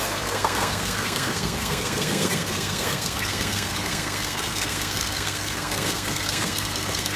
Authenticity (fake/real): fake